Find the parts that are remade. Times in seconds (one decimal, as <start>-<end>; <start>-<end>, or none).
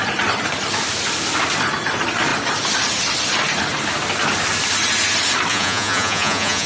5.5-6.7